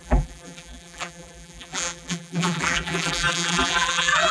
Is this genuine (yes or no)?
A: no